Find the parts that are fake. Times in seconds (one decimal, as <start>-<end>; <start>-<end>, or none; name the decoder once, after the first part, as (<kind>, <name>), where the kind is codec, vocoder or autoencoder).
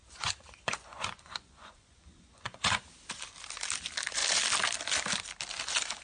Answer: 0.0-2.8 (vocoder, Vocos)